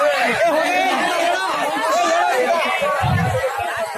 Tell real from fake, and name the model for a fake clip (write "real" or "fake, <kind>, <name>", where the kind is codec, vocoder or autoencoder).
real